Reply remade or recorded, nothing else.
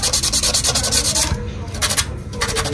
recorded